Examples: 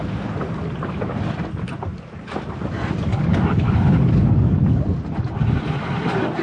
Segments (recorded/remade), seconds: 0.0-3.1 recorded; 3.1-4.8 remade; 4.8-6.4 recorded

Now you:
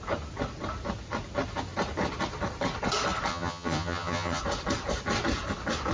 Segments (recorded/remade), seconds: 0.0-3.3 recorded; 3.3-4.4 remade; 4.4-5.9 recorded

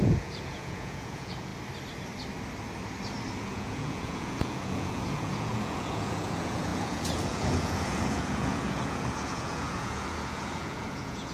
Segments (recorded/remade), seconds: 0.0-1.5 remade; 1.5-3.4 recorded; 3.4-11.3 remade